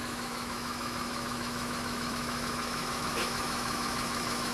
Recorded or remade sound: remade